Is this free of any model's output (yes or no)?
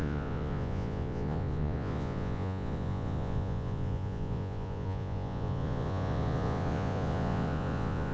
no